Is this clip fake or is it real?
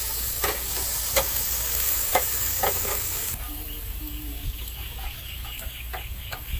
fake